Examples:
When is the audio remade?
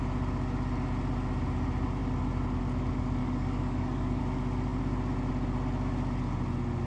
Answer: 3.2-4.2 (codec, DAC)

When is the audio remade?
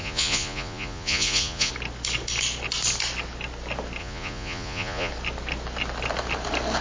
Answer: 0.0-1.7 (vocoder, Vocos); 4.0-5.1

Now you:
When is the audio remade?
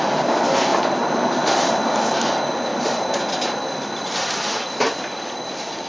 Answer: 0.7-1.7 (vocoder, BigVGAN v2); 2.7-3.3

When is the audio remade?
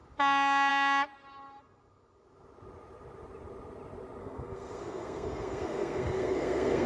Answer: 4.2-6.9 (codec, SNAC)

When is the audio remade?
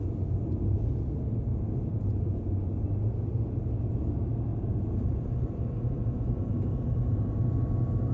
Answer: 1.5-2.4 (vocoder, BigVGAN v2); 4.5-7.4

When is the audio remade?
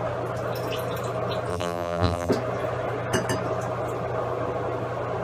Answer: 1.5-2.3 (vocoder, BigVGAN v2)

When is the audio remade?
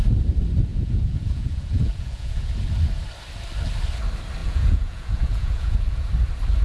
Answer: 0.7-2.5 (vocoder, Vocos); 4.4-6.1